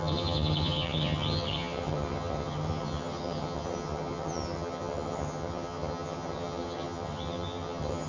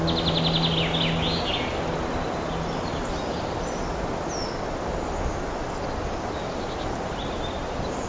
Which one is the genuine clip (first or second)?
second